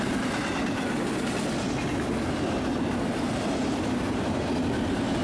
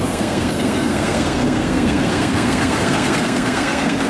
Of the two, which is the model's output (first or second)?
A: second